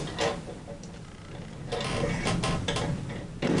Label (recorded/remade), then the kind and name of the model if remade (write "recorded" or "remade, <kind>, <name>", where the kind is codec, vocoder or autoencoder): recorded